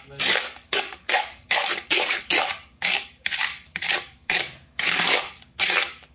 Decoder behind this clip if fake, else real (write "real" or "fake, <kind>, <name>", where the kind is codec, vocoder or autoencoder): fake, codec, DAC